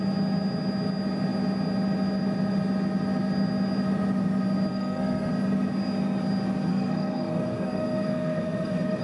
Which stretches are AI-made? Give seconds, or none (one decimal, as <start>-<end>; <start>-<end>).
4.7-5.3; 6.7-9.0

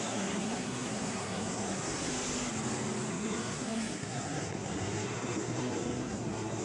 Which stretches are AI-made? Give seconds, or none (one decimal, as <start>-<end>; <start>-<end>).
0.0-2.1; 3.1-6.6

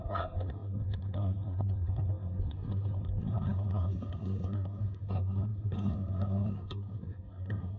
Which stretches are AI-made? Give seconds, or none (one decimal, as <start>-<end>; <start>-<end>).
0.0-7.8

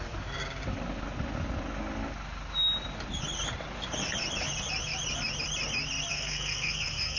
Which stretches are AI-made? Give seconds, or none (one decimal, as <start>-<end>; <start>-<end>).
6.1-7.2

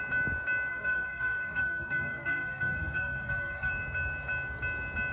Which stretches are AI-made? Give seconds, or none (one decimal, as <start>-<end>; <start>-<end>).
0.7-3.7